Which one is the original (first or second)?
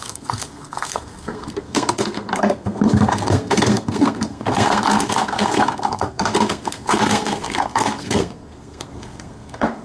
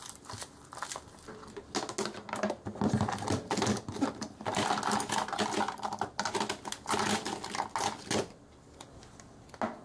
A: second